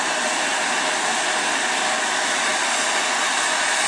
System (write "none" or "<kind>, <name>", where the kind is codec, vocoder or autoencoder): none